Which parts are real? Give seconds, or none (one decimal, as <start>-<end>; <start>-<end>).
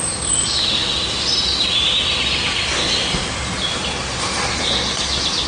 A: 0.0-5.5